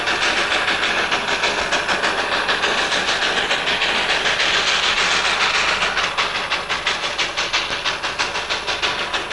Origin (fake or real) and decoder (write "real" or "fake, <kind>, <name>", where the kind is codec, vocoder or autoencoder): real